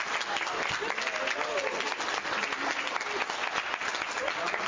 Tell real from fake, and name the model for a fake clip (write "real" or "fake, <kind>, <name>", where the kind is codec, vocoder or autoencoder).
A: real